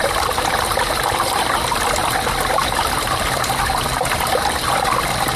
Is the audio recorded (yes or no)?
no